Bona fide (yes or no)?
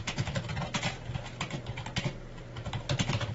yes